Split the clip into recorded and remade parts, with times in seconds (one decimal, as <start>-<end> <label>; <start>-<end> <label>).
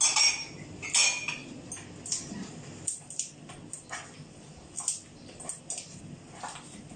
0.0-7.0 recorded